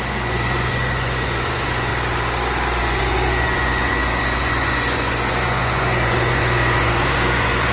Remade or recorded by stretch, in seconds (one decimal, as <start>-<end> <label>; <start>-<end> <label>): 0.0-1.9 remade; 1.9-2.8 recorded; 2.8-7.7 remade